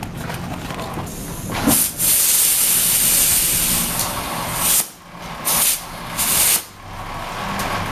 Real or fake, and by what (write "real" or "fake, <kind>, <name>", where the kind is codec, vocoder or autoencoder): real